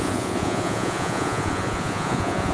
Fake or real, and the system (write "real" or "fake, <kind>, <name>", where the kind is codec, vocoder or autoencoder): fake, vocoder, Vocos